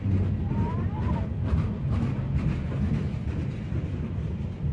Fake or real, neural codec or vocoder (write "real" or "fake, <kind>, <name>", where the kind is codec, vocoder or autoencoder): fake, vocoder, BigVGAN v2